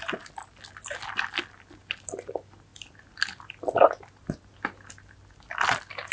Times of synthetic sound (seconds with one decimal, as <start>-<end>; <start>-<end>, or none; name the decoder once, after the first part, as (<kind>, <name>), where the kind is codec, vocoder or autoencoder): none